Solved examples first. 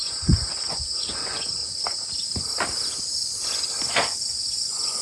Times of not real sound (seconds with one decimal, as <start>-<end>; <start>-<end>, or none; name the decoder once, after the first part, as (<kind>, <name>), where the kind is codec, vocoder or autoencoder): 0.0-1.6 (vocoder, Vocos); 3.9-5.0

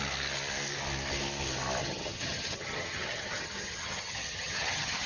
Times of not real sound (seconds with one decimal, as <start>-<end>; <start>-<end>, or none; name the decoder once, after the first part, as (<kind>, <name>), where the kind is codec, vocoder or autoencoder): 1.8-5.1 (vocoder, HiFi-GAN)

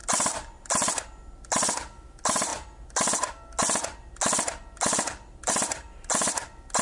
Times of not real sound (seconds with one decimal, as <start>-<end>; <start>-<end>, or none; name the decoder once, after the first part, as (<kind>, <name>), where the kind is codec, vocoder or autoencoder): 0.0-2.5 (vocoder, BigVGAN v2); 5.5-6.8

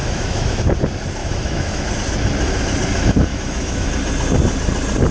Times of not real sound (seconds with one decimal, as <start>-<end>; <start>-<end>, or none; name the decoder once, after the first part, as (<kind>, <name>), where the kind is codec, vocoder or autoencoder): 0.0-0.6 (autoencoder, DAC-VAE); 1.2-1.9; 3.3-3.9

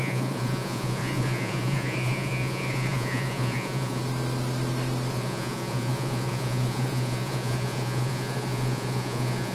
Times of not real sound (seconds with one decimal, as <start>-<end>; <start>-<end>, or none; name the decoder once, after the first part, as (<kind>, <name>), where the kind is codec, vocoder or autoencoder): 0.0-4.0 (vocoder, Vocos); 5.1-9.5

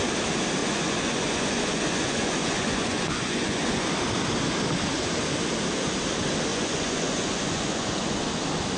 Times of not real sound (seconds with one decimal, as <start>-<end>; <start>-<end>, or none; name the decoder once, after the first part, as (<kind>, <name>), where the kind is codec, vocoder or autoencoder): 0.6-3.9 (vocoder, Vocos); 6.5-8.2